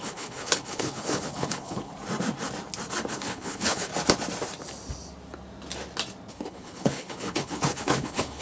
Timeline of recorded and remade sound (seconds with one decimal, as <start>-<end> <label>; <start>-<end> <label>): 0.0-1.9 remade; 1.9-3.1 recorded; 3.1-3.9 remade; 3.9-6.3 recorded; 6.3-8.4 remade